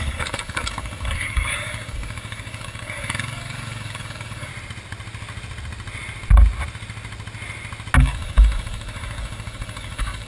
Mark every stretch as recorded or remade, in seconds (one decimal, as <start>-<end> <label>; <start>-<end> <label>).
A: 0.0-4.5 remade; 4.5-8.0 recorded; 8.0-10.3 remade